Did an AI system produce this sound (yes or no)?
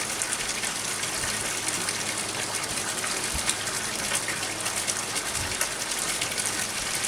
no